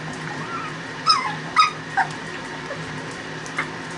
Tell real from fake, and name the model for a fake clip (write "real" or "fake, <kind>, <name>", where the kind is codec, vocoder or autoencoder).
fake, vocoder, BigVGAN v2